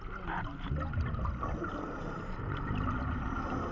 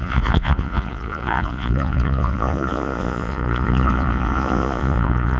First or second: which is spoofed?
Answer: second